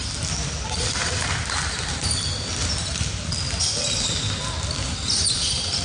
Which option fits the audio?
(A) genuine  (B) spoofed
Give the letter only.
A